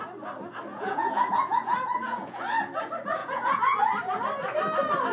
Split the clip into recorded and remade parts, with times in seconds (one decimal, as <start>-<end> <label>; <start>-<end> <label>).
0.0-0.7 recorded; 0.7-2.4 remade; 2.4-3.2 recorded; 3.2-3.8 remade; 3.8-5.1 recorded

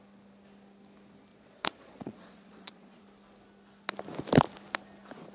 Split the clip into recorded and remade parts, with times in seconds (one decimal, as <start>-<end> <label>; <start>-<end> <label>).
0.0-1.3 recorded; 1.3-3.0 remade; 3.0-5.3 recorded

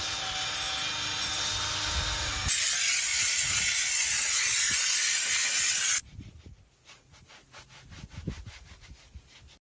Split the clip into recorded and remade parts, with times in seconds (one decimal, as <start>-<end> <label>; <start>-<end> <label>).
0.0-3.1 recorded; 3.1-5.6 remade; 5.6-6.0 recorded; 6.0-7.3 remade; 7.3-9.6 recorded